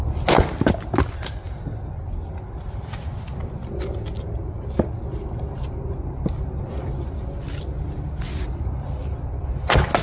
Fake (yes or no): no